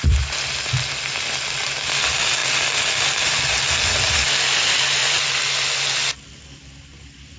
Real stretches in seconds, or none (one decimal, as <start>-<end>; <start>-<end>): 0.0-7.4